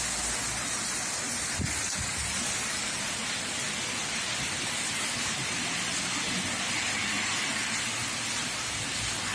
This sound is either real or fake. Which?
real